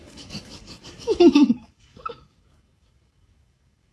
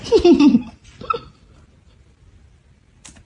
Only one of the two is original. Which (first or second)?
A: second